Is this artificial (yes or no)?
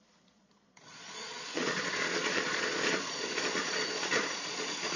yes